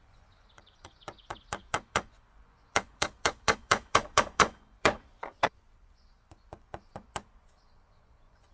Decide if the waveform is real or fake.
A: fake